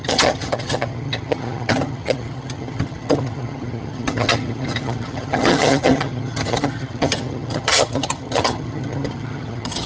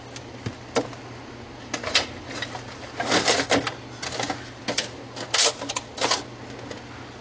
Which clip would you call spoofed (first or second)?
first